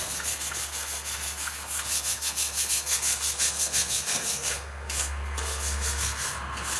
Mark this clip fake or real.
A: fake